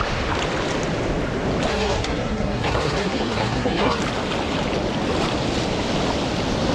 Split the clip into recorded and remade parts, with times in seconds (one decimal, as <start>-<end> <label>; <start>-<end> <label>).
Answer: 0.0-1.7 recorded; 1.7-4.0 remade; 4.0-6.7 recorded